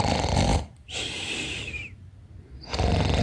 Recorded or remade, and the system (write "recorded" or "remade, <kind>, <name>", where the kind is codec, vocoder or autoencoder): recorded